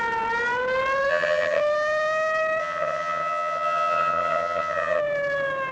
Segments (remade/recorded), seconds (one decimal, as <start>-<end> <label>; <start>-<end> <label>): 0.0-1.1 recorded; 1.1-1.6 remade; 1.6-2.6 recorded; 2.6-5.0 remade; 5.0-5.7 recorded